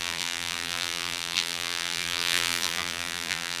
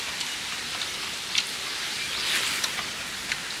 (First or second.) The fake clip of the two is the first